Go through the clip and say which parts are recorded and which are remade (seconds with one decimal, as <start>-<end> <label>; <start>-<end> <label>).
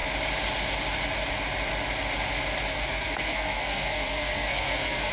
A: 0.0-2.7 recorded; 2.7-5.1 remade